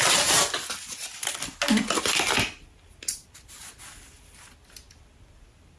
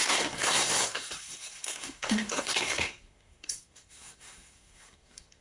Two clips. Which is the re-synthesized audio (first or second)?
second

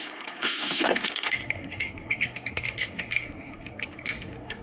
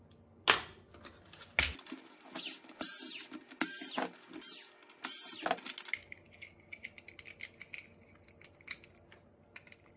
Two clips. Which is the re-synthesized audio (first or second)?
first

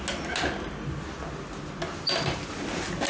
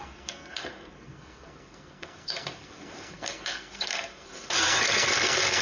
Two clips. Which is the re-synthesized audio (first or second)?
second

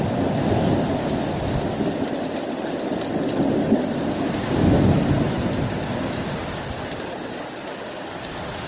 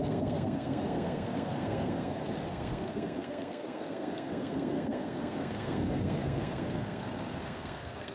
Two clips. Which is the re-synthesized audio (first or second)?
second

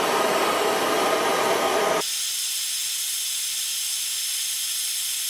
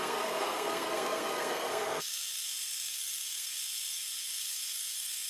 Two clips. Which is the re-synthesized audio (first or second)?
second